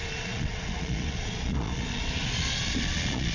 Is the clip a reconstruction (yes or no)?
yes